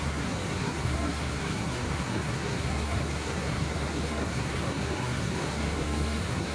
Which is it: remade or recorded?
remade